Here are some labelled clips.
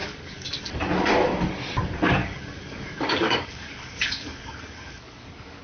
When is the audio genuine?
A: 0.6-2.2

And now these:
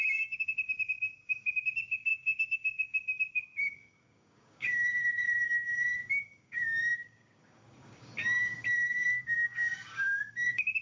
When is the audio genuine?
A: none

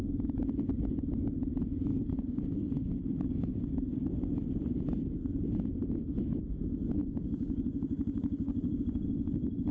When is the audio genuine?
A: 0.0-1.9; 4.1-7.0; 8.8-9.7

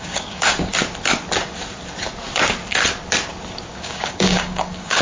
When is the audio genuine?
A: 0.7-3.7